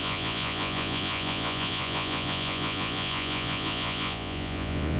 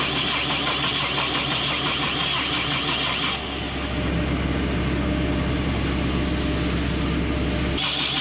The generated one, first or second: first